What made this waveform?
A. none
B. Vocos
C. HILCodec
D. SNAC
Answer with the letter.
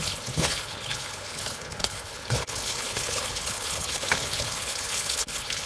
C